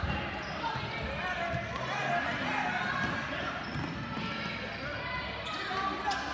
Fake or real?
real